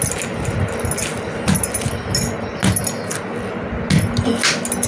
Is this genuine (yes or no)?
yes